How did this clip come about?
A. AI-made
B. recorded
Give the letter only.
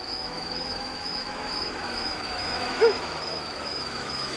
A